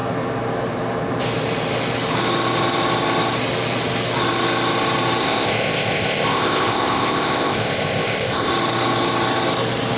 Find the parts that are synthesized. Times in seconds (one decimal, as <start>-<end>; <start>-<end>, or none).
5.2-8.5